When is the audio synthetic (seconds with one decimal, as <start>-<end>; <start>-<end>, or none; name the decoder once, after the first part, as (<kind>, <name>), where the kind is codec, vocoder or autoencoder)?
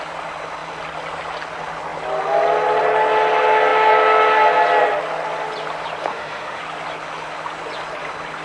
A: 6.1-6.6 (autoencoder, DAC-VAE)